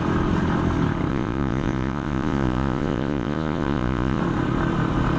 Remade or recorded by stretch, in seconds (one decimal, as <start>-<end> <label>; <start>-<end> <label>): 0.0-1.1 recorded; 1.1-4.2 remade; 4.2-5.2 recorded